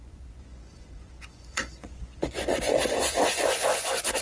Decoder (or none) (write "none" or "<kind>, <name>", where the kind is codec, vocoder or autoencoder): vocoder, Vocos